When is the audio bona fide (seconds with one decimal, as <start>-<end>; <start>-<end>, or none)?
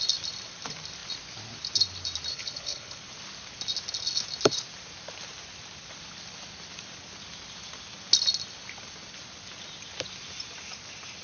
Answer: 0.0-2.3; 3.0-11.2